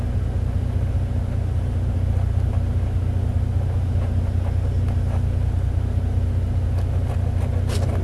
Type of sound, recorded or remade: recorded